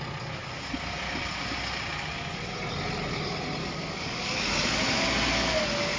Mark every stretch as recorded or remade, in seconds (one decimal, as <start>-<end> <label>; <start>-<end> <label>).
0.0-3.6 recorded; 3.6-4.4 remade; 4.4-6.0 recorded